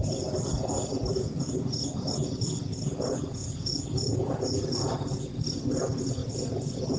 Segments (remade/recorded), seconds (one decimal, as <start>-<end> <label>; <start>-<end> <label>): 0.0-1.1 recorded; 1.1-5.3 remade; 5.3-6.2 recorded; 6.2-7.0 remade